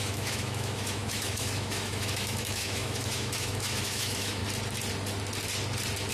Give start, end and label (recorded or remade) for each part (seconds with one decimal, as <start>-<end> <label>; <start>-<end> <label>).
0.0-4.4 remade; 4.4-6.1 recorded